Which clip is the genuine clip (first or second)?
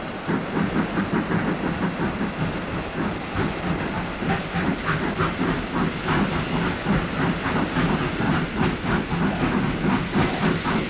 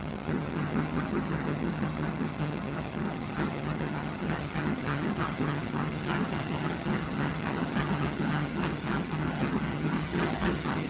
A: first